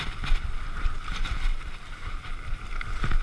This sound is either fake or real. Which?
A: real